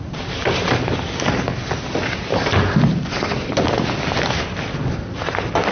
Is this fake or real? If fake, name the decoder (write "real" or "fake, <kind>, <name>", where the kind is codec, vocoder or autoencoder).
real